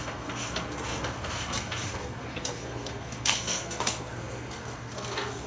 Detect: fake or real fake